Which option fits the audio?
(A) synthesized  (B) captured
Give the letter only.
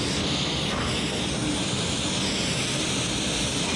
B